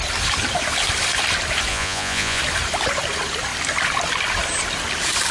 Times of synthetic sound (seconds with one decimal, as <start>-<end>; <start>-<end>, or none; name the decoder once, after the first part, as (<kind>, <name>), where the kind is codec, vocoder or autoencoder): 1.7-2.4 (vocoder, Vocos)